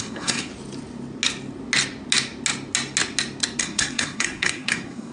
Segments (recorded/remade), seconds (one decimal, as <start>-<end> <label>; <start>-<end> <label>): 0.0-0.5 remade; 0.5-3.6 recorded; 3.6-5.1 remade